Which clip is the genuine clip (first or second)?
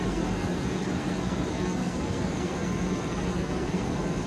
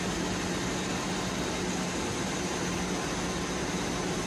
second